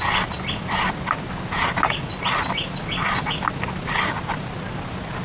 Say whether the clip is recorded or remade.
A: recorded